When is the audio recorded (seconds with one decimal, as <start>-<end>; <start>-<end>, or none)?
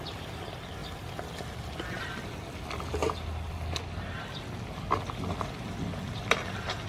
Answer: 0.0-6.9